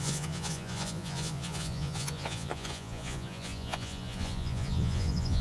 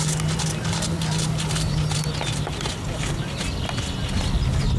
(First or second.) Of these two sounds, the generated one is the first